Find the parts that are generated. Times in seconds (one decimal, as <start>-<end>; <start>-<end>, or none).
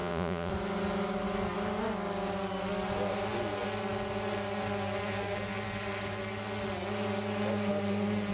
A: 0.0-0.5